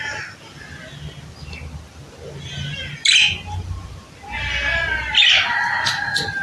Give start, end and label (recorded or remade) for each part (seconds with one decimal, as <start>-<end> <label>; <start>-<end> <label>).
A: 0.0-6.4 recorded